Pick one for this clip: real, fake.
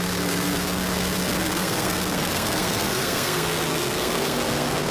fake